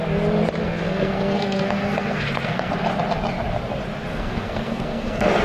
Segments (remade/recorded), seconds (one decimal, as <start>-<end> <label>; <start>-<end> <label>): 0.0-0.6 recorded; 0.6-2.7 remade; 2.7-4.1 recorded; 4.1-5.4 remade